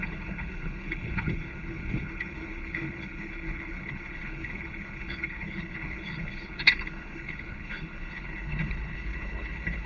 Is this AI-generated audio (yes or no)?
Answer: yes